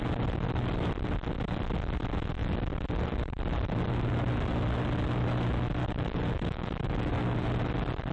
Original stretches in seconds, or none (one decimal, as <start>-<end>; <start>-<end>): 0.0-5.8; 7.1-8.1